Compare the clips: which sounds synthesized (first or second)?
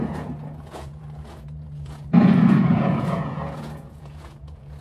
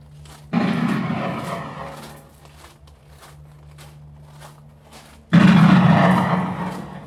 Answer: first